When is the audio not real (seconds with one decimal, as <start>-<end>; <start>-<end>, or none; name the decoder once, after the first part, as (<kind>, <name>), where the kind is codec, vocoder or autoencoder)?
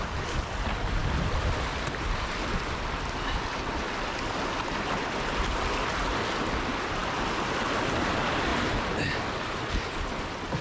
none